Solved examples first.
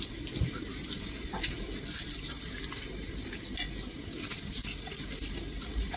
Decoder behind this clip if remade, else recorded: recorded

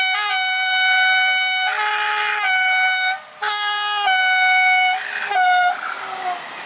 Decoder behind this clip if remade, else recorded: recorded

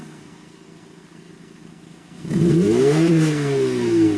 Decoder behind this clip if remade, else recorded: remade, codec, SNAC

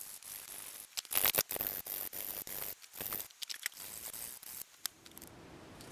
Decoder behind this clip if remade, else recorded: recorded